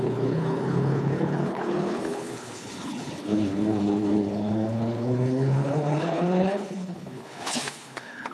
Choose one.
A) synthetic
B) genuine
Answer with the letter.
A